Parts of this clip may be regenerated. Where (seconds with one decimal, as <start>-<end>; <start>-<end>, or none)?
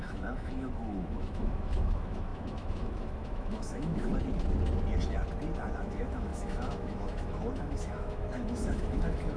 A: 0.0-4.1; 5.8-9.4